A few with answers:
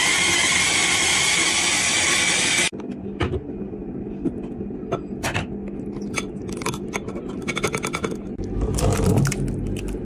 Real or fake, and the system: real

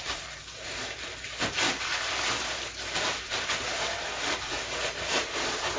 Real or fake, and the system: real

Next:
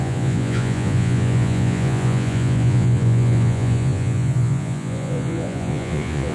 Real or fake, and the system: fake, vocoder, Vocos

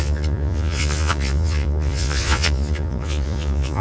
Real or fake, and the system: fake, vocoder, Vocos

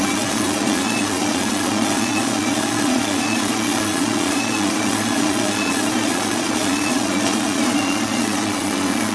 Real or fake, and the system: fake, vocoder, Vocos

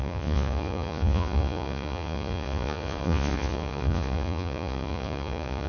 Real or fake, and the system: fake, vocoder, Vocos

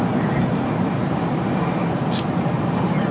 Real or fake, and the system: real